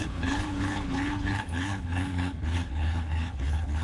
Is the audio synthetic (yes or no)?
yes